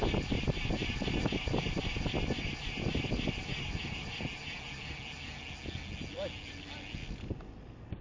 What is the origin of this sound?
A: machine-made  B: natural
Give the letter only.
B